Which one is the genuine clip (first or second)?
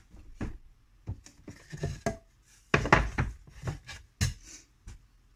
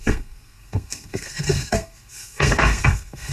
first